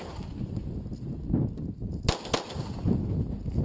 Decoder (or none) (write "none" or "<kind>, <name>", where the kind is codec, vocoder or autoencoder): none